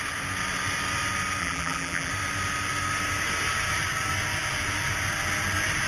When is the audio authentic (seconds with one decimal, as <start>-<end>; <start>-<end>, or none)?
0.0-1.4; 2.1-5.9